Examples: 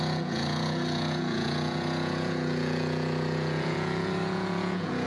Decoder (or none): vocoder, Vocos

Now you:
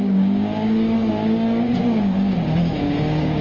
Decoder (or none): codec, DAC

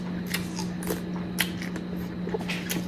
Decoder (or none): none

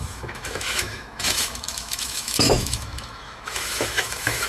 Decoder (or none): autoencoder, DAC-VAE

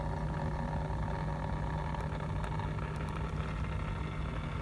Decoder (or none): none